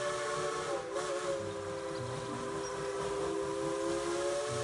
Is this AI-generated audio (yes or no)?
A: no